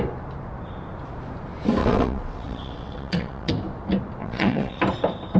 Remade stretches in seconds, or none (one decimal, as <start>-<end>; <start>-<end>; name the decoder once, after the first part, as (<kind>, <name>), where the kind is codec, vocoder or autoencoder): 1.8-3.5 (vocoder, WaveNeXt); 4.2-4.8